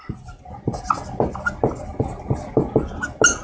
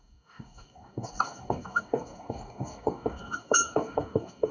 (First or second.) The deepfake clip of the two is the second